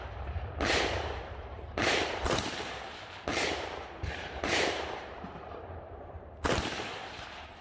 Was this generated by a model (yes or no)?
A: yes